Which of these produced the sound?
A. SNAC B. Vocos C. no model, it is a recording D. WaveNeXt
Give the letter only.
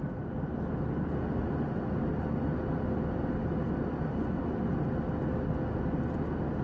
C